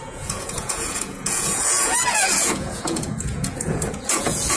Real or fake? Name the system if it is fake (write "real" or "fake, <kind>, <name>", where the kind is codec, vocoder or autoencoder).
fake, vocoder, Vocos